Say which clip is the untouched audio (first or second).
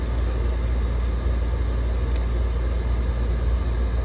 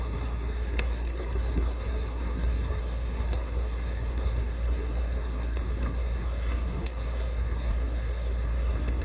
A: first